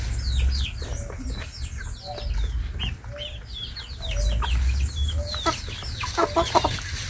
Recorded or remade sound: recorded